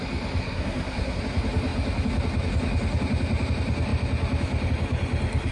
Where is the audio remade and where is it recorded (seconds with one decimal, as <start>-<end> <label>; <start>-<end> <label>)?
0.0-0.4 recorded; 0.4-1.2 remade; 1.2-5.5 recorded